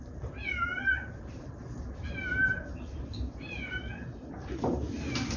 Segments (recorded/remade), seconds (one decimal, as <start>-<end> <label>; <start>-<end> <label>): 0.0-5.4 recorded